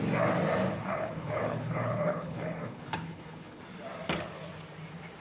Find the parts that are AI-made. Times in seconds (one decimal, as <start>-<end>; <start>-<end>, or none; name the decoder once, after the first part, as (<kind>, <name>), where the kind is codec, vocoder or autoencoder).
0.8-3.6 (codec, HILCodec)

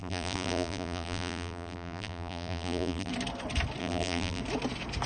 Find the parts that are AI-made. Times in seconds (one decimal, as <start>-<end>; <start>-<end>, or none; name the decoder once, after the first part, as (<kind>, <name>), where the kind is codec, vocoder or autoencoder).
0.0-3.1 (vocoder, BigVGAN v2); 3.8-4.4

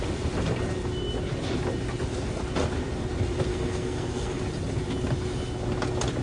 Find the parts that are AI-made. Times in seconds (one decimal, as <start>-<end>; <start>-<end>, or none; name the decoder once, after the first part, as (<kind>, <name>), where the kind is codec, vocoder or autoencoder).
3.5-4.4 (codec, SNAC)

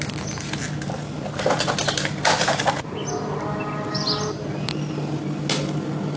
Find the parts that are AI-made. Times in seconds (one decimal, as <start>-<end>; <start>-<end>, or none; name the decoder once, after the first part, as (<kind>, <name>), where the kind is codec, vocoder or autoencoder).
none

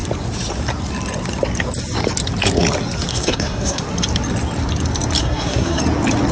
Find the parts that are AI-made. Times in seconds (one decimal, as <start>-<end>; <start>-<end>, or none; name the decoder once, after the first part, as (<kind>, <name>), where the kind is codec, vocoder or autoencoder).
3.1-3.8 (codec, SNAC); 5.2-5.8